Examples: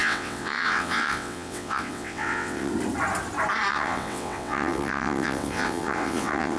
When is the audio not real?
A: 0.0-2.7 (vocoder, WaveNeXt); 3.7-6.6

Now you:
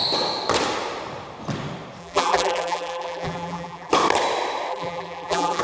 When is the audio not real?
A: 2.0-3.9 (vocoder, BigVGAN v2); 4.7-5.6

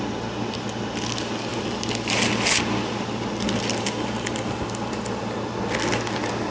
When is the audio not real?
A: none

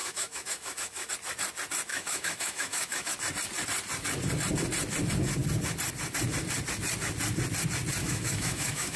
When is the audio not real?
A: 0.0-1.1 (autoencoder, DAC-VAE); 1.9-3.1; 8.0-9.0

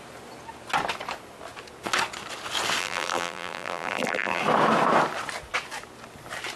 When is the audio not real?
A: 2.8-4.4 (vocoder, BigVGAN v2)